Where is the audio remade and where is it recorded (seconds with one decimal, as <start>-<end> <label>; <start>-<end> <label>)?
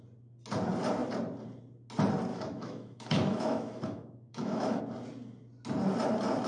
0.0-2.3 recorded; 2.3-4.8 remade; 4.8-6.5 recorded